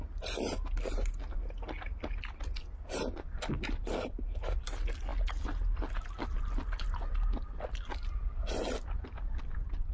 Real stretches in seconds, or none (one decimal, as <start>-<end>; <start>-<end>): 0.0-9.9